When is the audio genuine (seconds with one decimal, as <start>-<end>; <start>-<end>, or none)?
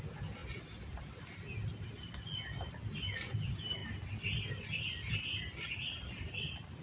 0.0-6.8